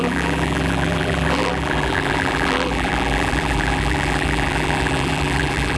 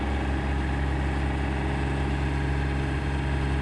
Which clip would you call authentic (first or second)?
second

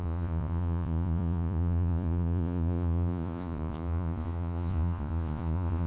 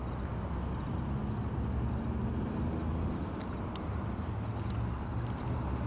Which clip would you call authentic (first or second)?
second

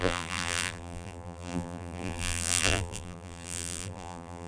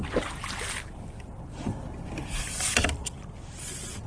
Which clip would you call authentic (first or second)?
second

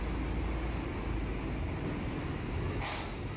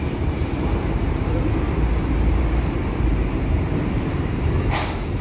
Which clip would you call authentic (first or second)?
first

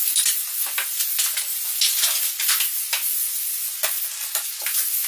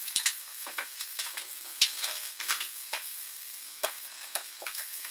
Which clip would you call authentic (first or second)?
first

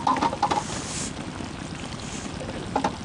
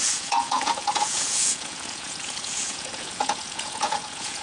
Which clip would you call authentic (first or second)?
first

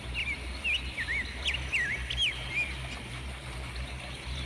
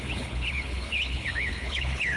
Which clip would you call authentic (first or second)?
first